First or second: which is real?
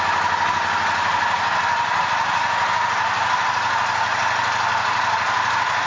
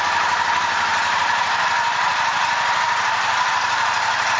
first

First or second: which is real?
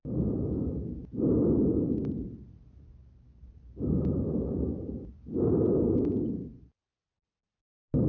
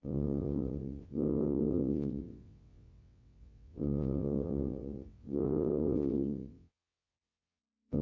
first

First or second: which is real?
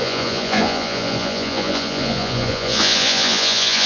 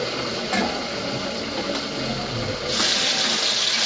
second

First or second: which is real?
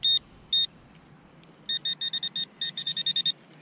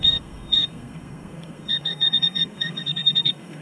first